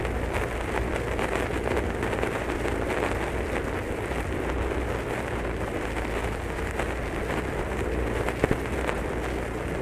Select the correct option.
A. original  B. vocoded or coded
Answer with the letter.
A